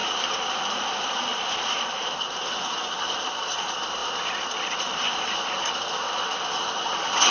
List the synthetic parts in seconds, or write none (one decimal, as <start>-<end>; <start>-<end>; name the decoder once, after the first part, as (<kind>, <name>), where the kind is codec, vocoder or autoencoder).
0.0-2.2 (vocoder, BigVGAN v2)